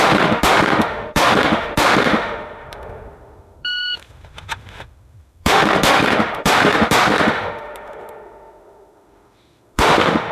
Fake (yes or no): yes